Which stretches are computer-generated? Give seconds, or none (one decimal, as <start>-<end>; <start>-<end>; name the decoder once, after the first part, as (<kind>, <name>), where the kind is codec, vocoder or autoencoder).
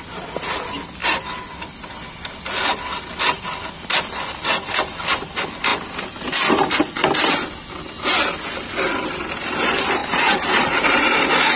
10.0-11.2 (vocoder, BigVGAN v2)